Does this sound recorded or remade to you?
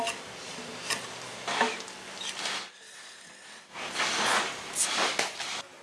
recorded